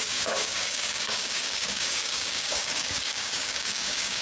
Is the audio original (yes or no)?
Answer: no